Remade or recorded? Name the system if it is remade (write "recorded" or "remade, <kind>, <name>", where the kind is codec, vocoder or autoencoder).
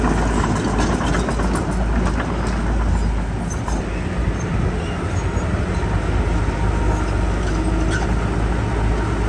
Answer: recorded